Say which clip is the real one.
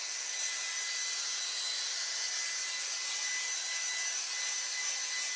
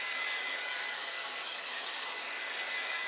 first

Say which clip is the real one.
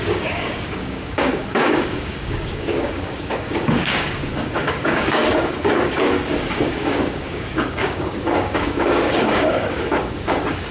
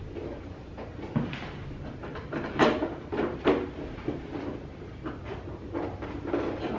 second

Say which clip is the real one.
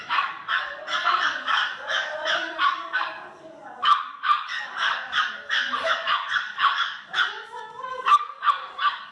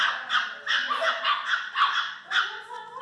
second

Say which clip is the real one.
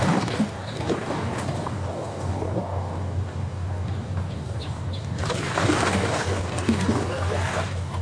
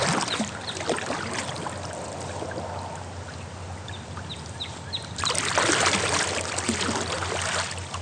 second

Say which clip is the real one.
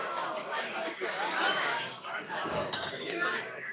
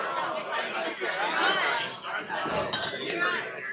second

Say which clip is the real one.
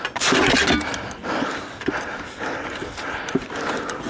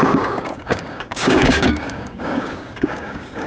first